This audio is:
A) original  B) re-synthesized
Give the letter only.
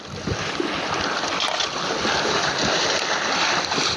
A